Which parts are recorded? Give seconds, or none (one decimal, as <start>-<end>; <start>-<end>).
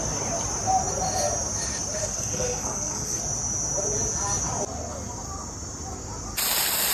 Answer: 0.0-2.0; 3.2-6.9